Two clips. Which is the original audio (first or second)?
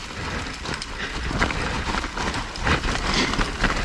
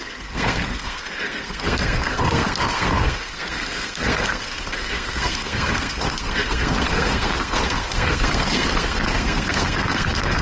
first